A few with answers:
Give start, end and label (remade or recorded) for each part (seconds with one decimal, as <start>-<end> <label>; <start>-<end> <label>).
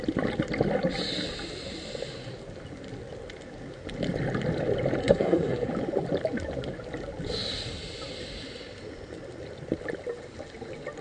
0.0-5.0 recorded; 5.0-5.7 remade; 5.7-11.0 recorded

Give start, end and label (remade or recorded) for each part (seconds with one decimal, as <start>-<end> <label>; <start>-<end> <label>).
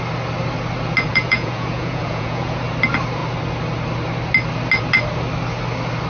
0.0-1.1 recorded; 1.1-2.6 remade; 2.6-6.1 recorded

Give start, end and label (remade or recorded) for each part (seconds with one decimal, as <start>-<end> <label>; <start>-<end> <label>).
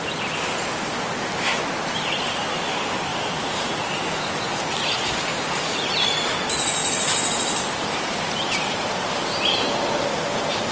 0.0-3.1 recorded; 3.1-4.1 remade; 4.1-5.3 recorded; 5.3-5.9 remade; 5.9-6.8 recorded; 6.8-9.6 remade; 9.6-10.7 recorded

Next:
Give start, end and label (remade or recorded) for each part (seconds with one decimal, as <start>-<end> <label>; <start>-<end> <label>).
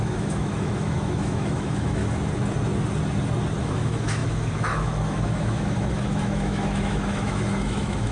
0.0-2.0 remade; 2.0-3.6 recorded; 3.6-8.1 remade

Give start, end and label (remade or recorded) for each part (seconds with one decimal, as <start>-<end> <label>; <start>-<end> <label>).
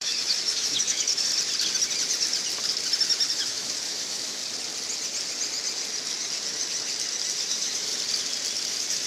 0.0-1.3 remade; 1.3-3.3 recorded; 3.3-4.4 remade; 4.4-7.4 recorded; 7.4-7.9 remade; 7.9-8.7 recorded; 8.7-9.1 remade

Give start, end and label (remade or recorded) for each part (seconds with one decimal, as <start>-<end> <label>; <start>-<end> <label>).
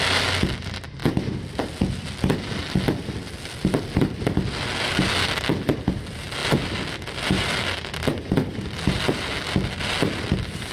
0.0-10.7 recorded